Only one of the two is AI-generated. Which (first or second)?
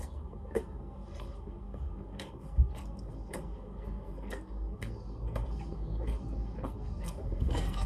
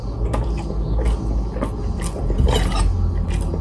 first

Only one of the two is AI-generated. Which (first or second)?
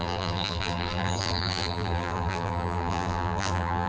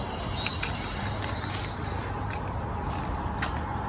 first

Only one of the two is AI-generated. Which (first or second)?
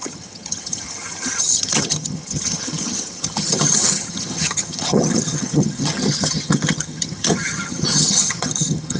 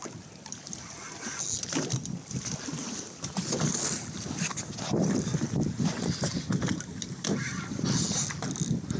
first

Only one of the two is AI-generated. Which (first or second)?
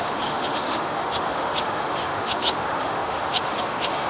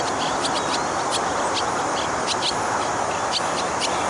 first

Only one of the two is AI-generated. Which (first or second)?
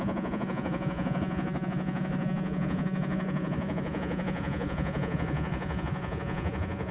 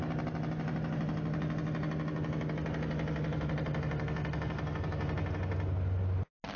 first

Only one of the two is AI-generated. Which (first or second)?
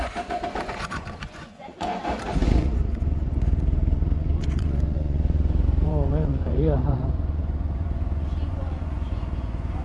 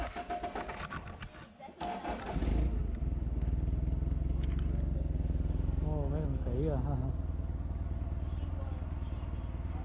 first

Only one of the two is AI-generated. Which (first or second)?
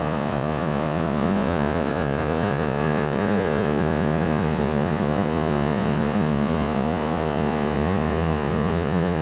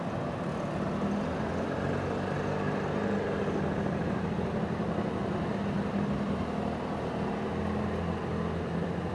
first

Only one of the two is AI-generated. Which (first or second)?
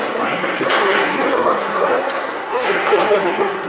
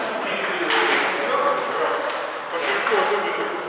first